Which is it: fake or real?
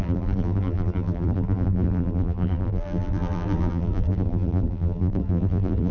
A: fake